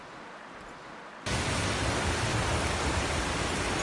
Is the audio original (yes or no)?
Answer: yes